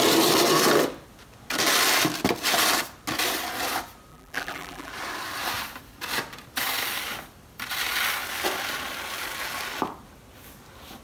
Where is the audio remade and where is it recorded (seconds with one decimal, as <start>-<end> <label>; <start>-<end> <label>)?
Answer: 0.0-4.1 recorded; 4.1-4.9 remade; 4.9-11.0 recorded